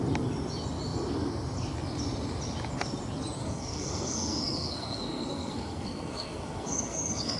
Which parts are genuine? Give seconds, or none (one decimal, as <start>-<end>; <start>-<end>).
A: 0.0-3.4

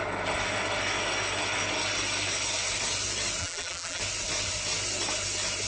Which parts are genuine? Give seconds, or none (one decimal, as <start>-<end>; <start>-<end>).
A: 0.0-3.4; 4.0-5.7

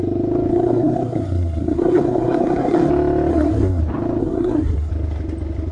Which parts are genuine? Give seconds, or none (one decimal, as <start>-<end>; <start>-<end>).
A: 0.0-0.5; 2.9-3.3; 3.8-4.2; 4.9-5.7

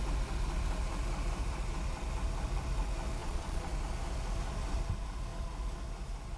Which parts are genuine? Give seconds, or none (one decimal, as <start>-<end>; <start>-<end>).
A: 0.0-3.2; 3.7-6.4